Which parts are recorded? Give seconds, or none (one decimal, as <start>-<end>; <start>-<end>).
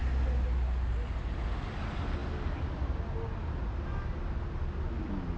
0.0-5.4